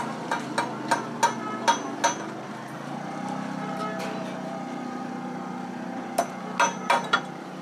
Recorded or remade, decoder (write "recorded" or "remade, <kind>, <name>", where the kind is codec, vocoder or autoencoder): recorded